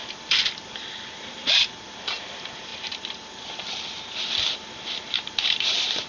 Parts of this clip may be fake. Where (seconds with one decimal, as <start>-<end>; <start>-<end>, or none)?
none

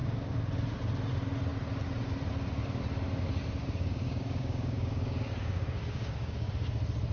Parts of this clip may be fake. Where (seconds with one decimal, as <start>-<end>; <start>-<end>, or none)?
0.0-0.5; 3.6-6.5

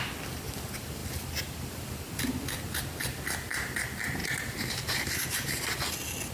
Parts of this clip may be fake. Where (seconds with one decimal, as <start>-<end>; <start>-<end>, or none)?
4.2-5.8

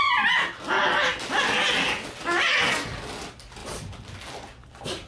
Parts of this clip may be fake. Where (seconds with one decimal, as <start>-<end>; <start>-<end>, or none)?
none